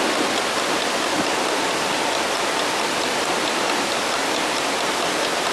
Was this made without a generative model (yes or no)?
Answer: yes